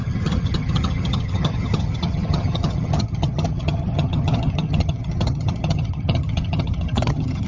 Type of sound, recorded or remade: remade